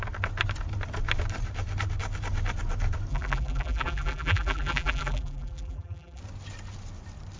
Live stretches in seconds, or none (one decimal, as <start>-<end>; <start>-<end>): 0.0-3.1; 6.2-7.4